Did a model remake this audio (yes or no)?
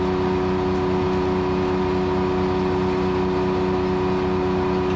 no